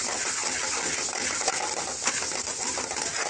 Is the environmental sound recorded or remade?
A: recorded